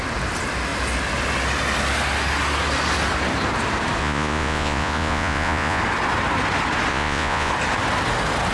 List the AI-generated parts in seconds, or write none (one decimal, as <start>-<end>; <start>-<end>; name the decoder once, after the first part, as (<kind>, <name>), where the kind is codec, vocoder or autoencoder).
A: 4.0-5.8 (vocoder, Vocos); 6.9-7.5